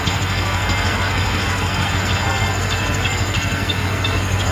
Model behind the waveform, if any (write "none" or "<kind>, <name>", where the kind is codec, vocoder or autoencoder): codec, SNAC